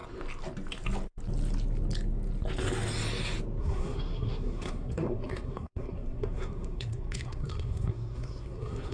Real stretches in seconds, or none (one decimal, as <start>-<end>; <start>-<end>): 0.0-3.6